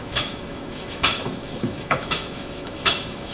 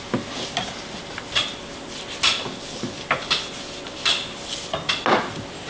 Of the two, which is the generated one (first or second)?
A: first